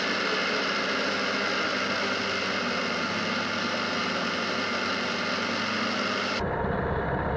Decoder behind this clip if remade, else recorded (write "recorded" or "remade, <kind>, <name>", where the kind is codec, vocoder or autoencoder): recorded